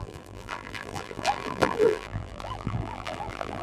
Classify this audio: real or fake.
fake